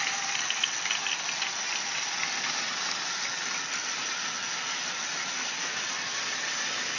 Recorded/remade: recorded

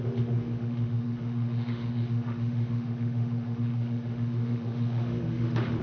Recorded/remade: remade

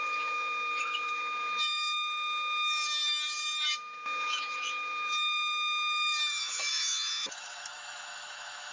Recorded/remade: remade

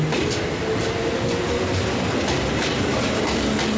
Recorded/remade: recorded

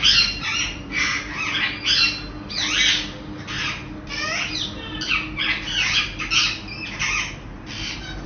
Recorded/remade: recorded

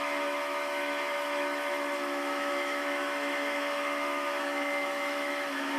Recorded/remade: remade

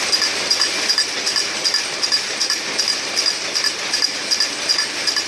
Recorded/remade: recorded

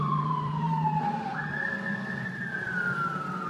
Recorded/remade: remade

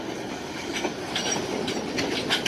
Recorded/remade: recorded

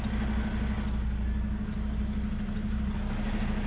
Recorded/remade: recorded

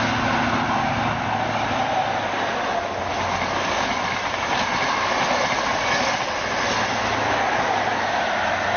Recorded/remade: recorded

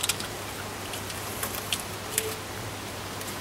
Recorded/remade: recorded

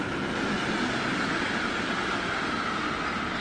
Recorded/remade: recorded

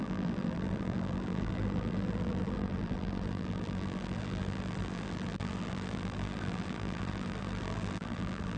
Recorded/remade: remade